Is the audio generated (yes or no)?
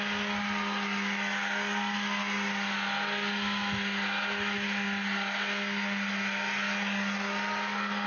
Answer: no